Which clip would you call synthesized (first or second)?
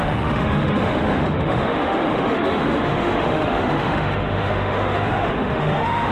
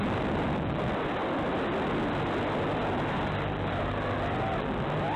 first